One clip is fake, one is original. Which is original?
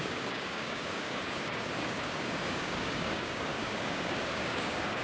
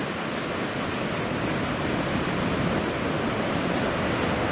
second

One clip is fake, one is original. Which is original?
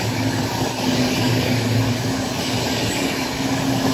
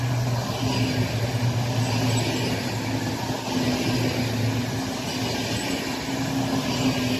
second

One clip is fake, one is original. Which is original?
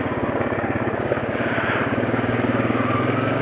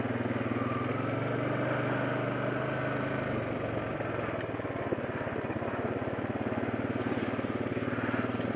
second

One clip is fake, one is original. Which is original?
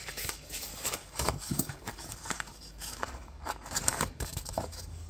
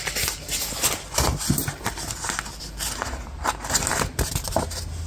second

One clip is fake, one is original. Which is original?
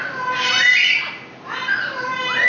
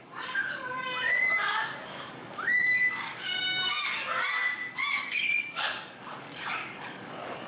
first